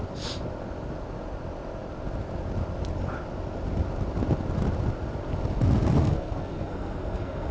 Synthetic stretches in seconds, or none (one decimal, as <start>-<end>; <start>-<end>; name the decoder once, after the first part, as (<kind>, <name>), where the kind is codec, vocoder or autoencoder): 6.0-7.5 (codec, SNAC)